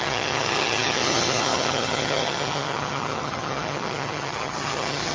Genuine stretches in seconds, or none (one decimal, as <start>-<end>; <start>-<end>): none